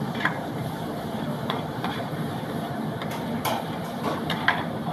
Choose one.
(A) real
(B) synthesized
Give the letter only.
B